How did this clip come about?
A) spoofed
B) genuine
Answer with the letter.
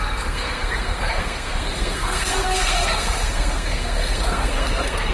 A